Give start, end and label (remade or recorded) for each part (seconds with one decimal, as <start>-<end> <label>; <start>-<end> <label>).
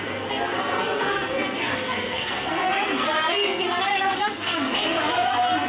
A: 0.0-5.7 remade